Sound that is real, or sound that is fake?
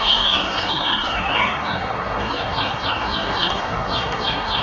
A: fake